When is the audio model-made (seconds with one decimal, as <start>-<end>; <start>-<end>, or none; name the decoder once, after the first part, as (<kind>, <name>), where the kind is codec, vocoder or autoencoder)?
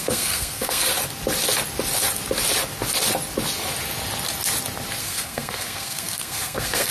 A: 0.0-0.9 (codec, SNAC); 5.0-6.9